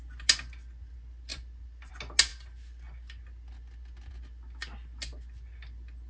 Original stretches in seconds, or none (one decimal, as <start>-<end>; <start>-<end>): 0.0-1.3; 1.9-6.1